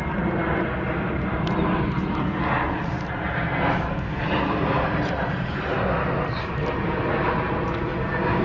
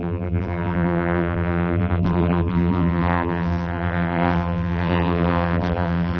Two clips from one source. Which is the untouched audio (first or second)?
first